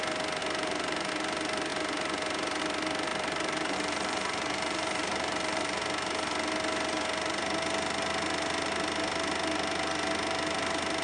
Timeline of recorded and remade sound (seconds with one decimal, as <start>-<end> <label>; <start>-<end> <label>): 0.0-0.4 recorded; 0.4-1.1 remade; 1.1-3.1 recorded; 3.1-5.8 remade; 5.8-11.0 recorded